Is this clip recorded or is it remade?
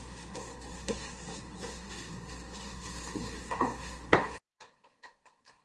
remade